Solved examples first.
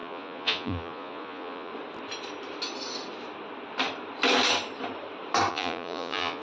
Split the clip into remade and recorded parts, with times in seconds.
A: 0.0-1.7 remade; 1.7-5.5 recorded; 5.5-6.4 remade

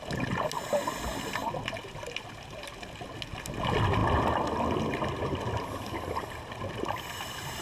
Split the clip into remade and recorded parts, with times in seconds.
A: 0.0-7.6 recorded

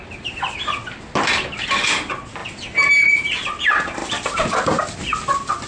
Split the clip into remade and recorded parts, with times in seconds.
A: 0.0-5.7 recorded

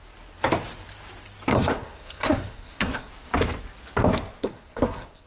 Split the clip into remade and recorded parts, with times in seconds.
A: 0.0-1.5 recorded; 1.5-3.1 remade; 3.1-4.4 recorded; 4.4-5.3 remade

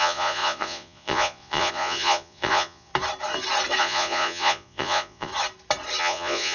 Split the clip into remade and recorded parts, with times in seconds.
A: 0.0-2.9 remade; 2.9-3.8 recorded; 3.8-5.3 remade; 5.3-6.0 recorded; 6.0-6.5 remade